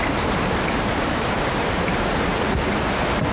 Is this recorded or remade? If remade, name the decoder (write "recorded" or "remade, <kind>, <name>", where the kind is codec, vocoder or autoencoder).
recorded